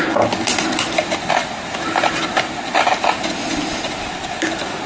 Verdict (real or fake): real